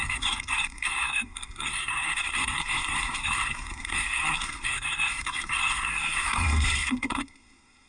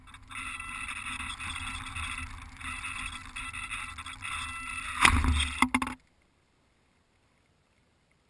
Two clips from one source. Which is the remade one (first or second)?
first